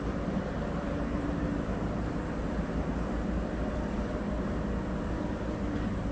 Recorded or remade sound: remade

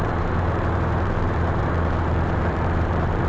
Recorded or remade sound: remade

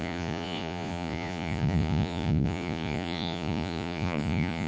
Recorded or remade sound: remade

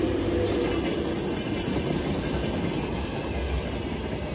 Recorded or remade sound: recorded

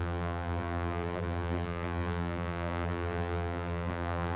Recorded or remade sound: remade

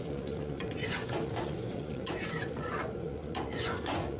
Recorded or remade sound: remade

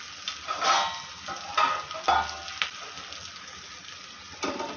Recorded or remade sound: recorded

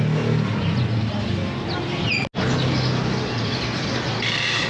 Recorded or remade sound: recorded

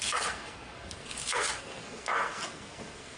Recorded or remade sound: remade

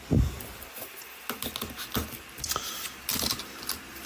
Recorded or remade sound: recorded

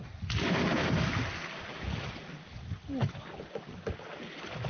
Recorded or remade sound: recorded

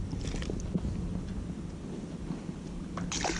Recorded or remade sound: recorded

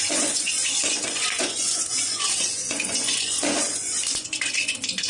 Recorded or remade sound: remade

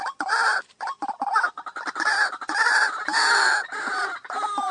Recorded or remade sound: recorded